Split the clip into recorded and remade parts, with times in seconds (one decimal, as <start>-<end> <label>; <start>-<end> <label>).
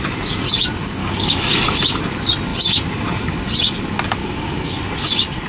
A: 0.0-1.0 recorded; 1.0-1.8 remade; 1.8-4.2 recorded; 4.2-4.8 remade; 4.8-5.5 recorded